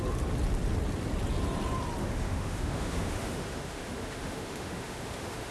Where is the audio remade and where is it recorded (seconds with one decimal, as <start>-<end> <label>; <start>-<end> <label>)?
0.0-2.0 recorded; 2.0-5.5 remade